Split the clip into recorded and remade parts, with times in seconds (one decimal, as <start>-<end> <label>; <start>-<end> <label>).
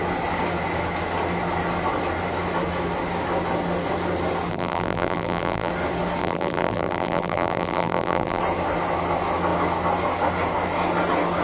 0.0-4.5 recorded; 4.5-5.7 remade; 5.7-6.2 recorded; 6.2-8.4 remade; 8.4-11.4 recorded